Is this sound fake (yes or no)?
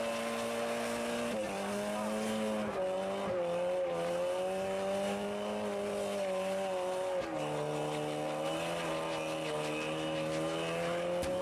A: no